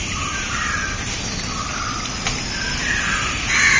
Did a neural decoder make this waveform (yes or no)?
no